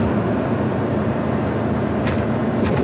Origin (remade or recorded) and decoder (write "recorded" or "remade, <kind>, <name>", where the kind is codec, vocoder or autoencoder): recorded